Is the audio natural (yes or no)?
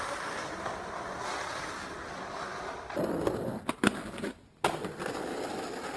yes